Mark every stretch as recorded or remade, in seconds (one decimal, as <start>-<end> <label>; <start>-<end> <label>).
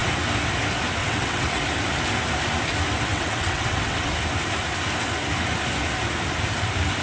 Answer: 0.0-1.0 recorded; 1.0-1.6 remade; 1.6-3.1 recorded; 3.1-4.1 remade; 4.1-7.0 recorded